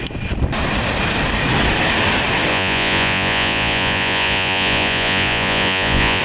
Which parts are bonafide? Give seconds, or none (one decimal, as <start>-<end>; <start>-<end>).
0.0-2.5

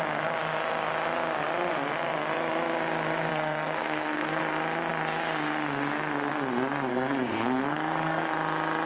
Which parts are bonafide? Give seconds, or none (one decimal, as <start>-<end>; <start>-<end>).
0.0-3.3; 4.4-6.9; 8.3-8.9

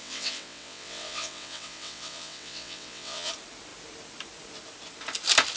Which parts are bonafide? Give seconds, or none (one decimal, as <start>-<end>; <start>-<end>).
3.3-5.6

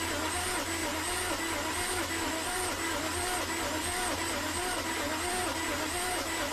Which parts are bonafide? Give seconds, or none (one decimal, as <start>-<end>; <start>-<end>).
0.0-6.5